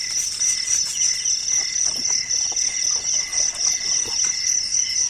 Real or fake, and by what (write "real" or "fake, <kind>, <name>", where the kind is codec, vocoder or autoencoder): real